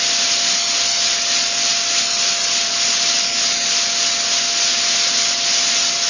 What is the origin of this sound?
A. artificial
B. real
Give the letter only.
B